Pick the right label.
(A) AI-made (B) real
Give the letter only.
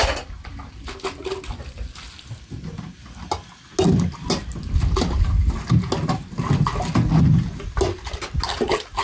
B